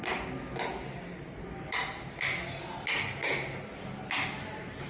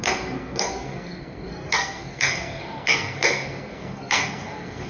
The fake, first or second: second